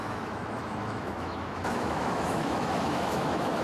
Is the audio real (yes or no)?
no